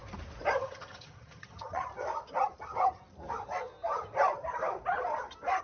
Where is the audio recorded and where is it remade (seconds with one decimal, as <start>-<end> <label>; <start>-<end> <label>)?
0.0-0.6 recorded; 0.6-1.9 remade; 1.9-5.6 recorded